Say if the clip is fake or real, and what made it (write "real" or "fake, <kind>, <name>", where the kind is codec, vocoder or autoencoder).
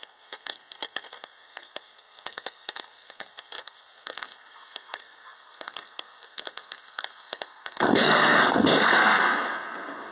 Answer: fake, codec, SNAC